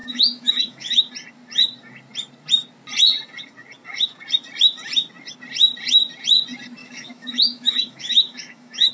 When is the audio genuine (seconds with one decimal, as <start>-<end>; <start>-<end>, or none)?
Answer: 1.0-6.8